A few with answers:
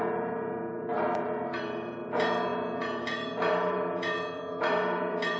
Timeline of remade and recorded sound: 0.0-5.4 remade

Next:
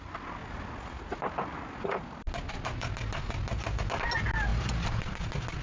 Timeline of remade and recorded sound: 0.0-4.5 recorded; 4.5-5.1 remade; 5.1-5.6 recorded

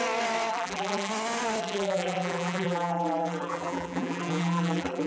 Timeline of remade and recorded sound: 0.0-0.5 recorded; 0.5-1.1 remade; 1.1-1.6 recorded; 1.6-5.1 remade

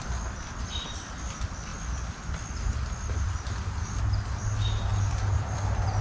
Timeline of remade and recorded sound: 0.0-4.9 recorded; 4.9-6.0 remade

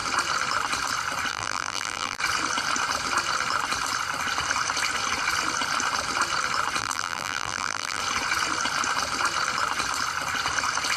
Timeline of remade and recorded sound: 0.0-1.3 recorded; 1.3-2.2 remade; 2.2-6.8 recorded; 6.8-8.0 remade; 8.0-11.0 recorded

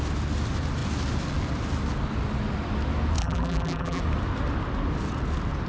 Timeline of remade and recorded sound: 0.0-3.2 recorded; 3.2-4.0 remade; 4.0-5.7 recorded